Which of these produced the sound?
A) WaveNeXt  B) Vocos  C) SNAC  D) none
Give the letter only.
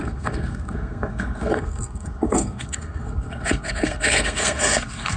C